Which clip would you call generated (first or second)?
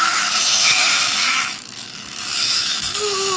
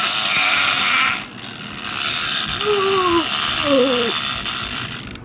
first